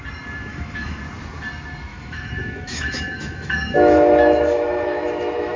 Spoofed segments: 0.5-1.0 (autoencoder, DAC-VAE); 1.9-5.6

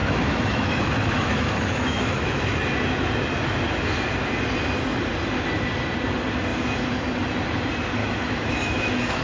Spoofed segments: 0.0-2.6 (autoencoder, DAC-VAE); 8.0-9.2